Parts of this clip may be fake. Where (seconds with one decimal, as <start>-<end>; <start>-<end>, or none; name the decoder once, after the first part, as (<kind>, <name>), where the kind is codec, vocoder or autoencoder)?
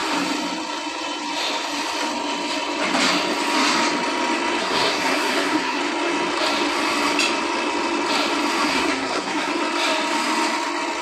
4.6-5.8 (codec, SNAC); 8.7-9.5